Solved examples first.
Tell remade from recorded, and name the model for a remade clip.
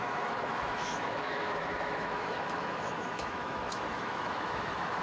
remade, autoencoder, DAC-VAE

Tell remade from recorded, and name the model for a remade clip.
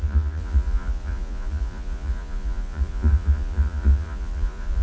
remade, vocoder, Vocos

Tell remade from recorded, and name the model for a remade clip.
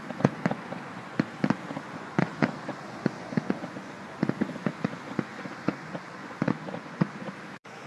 remade, vocoder, Vocos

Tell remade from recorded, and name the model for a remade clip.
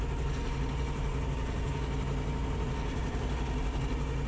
recorded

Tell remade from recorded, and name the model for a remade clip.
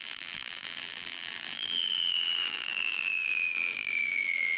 remade, vocoder, BigVGAN v2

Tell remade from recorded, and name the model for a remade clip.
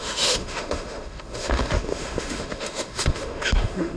remade, autoencoder, DAC-VAE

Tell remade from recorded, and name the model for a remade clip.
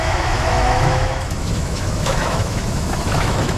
remade, autoencoder, DAC-VAE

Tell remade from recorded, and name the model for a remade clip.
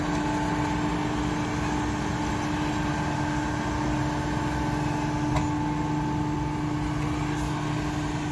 recorded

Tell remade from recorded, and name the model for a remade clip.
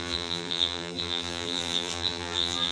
remade, vocoder, BigVGAN v2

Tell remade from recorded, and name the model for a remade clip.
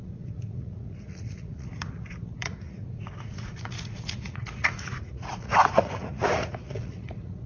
remade, vocoder, Vocos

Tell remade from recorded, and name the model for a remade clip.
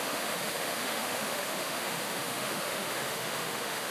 remade, autoencoder, DAC-VAE